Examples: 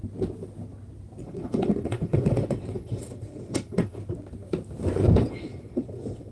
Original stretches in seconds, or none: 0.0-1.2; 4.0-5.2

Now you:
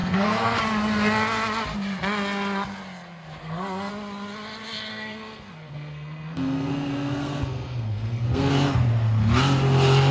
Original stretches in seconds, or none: 0.6-3.4; 3.9-4.9; 8.5-10.1